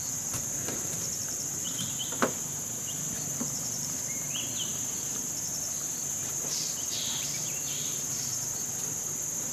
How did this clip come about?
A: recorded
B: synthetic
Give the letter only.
B